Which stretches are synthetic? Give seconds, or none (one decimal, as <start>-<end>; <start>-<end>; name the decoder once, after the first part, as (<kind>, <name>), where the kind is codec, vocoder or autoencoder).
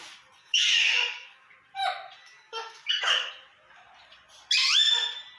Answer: 0.4-1.5 (codec, DAC); 2.2-3.3